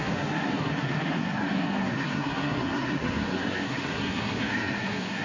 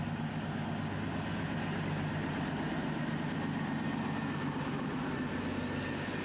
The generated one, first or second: first